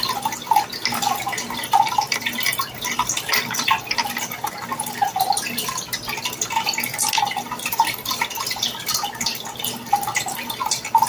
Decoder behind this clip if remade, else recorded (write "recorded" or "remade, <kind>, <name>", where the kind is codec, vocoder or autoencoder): recorded